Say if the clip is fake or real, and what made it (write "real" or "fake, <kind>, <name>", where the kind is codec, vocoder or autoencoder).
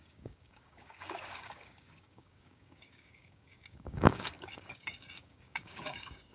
fake, codec, DAC